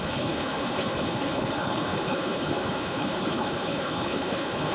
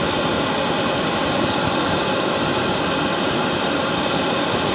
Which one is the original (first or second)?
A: second